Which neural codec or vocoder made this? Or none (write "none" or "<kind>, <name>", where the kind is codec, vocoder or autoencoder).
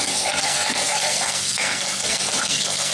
codec, SNAC